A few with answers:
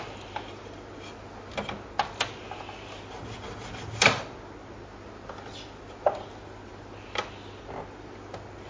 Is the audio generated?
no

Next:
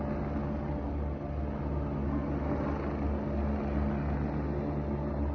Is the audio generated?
no